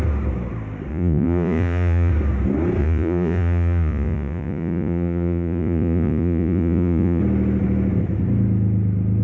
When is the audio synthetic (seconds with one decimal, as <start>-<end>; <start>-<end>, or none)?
0.9-2.1; 2.8-7.2